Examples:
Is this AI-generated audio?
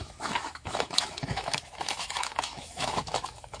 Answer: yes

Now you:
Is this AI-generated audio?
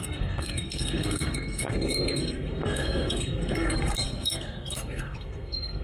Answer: yes